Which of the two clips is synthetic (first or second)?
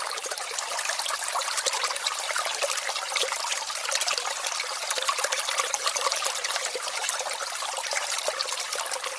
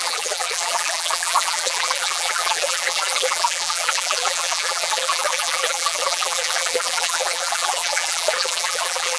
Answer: second